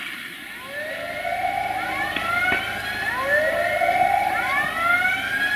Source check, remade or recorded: recorded